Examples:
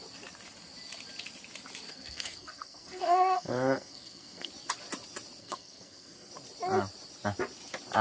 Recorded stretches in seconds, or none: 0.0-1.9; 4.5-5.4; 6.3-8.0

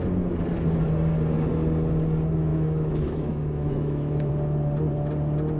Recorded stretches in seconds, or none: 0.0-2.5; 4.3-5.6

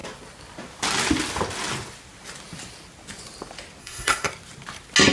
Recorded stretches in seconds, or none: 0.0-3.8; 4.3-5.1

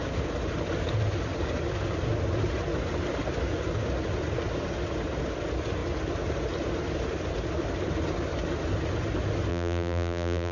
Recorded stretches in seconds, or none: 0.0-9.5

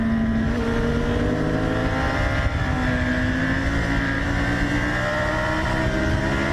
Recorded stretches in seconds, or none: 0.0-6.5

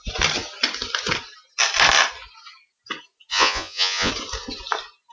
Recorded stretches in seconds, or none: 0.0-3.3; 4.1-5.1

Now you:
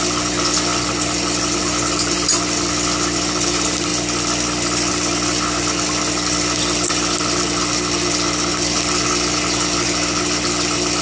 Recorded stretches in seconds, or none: 0.0-3.9; 4.9-11.0

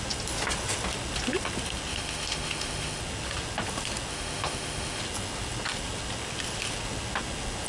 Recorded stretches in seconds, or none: 0.0-1.9; 3.0-4.1; 5.0-7.7